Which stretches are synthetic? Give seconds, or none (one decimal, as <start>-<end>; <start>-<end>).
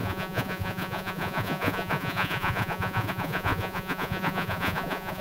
0.0-5.2